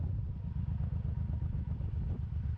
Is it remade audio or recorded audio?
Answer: recorded